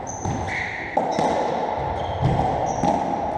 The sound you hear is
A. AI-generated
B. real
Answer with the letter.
B